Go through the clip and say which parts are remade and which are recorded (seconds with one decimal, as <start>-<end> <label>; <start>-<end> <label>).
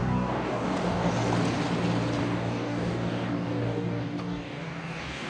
0.0-1.1 remade; 1.1-2.2 recorded; 2.2-5.3 remade